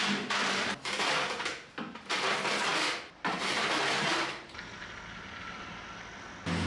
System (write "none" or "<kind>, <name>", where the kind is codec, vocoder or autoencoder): none